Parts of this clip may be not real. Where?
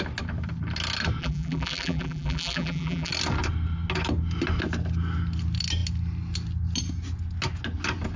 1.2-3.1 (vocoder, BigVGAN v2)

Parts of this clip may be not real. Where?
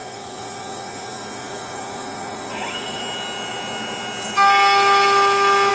0.0-3.0 (vocoder, Vocos)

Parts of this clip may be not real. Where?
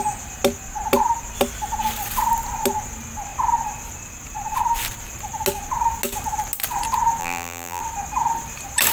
7.2-7.8 (vocoder, BigVGAN v2)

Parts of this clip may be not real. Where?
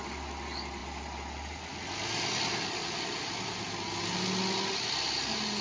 none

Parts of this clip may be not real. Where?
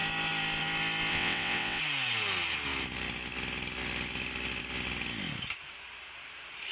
1.1-1.8 (vocoder, WaveNeXt)